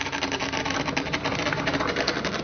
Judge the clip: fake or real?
real